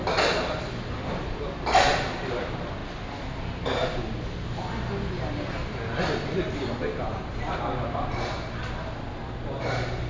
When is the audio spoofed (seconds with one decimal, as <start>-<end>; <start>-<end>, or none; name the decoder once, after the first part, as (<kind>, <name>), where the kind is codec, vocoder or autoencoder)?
none